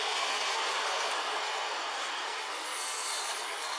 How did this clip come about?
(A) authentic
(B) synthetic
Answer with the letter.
B